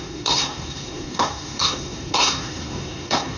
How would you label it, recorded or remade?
remade